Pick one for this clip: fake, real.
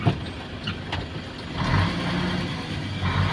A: real